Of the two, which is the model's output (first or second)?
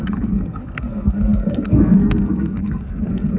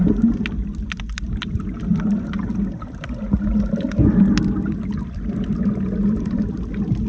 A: first